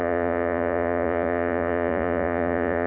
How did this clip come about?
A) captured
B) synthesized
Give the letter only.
B